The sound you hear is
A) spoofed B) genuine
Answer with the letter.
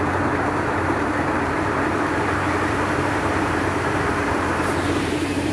A